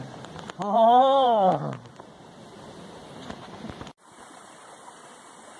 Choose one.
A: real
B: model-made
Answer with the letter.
B